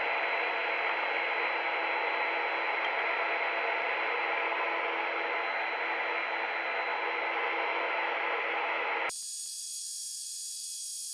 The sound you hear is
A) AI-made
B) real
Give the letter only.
B